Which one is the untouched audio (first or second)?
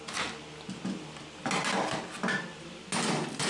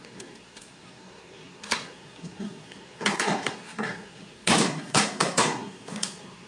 first